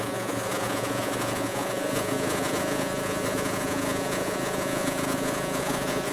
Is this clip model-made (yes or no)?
yes